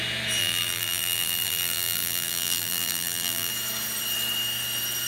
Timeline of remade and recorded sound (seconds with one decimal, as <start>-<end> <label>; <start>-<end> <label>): 0.0-0.4 recorded; 0.4-3.5 remade; 3.5-5.1 recorded